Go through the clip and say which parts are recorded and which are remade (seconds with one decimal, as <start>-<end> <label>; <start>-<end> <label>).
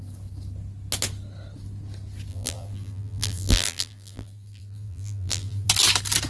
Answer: 0.0-2.3 recorded; 2.3-5.7 remade; 5.7-6.3 recorded